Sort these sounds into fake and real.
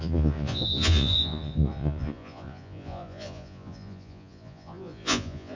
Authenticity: fake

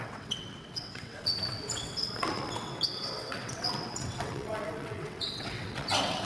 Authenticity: fake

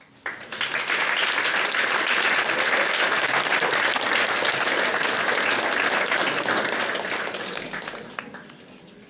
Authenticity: real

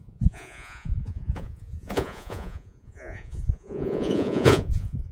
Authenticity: fake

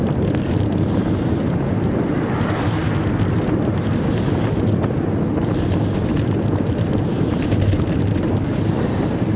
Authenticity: fake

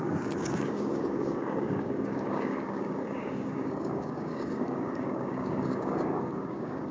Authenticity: fake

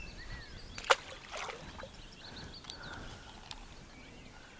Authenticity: real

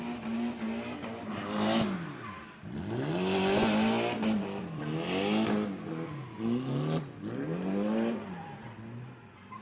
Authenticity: real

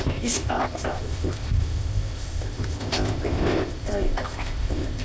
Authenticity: fake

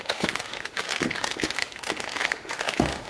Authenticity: fake